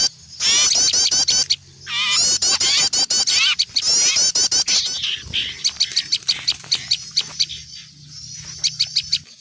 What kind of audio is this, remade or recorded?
recorded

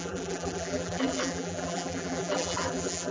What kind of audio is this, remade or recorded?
remade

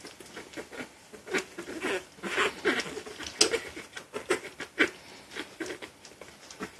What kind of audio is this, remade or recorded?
recorded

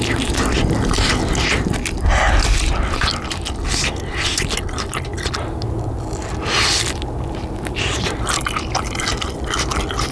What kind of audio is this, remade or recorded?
recorded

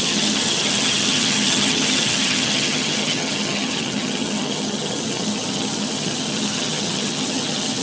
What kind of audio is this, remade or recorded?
remade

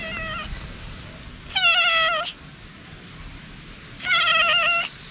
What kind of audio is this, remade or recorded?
recorded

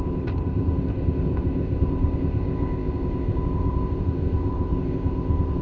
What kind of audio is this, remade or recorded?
remade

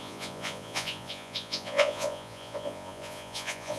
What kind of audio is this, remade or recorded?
remade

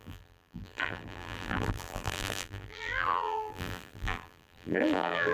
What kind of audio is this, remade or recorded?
remade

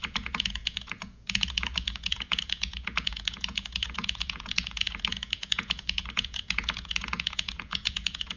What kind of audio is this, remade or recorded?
remade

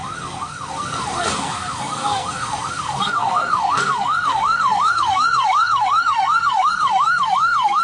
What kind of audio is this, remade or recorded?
remade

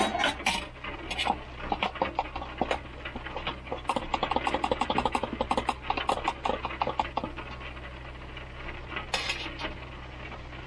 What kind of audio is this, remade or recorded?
recorded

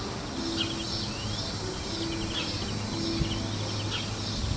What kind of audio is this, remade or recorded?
recorded